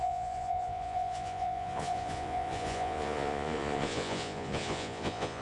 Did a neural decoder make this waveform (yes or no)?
yes